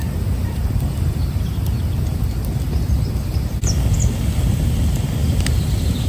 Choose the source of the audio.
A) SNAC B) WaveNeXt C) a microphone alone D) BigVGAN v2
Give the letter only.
C